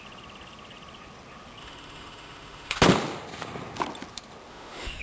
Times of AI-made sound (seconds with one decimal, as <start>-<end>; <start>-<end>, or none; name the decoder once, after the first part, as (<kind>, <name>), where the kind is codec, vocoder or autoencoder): 1.6-2.8 (autoencoder, DAC-VAE); 4.5-5.0